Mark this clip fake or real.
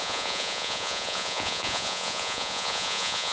fake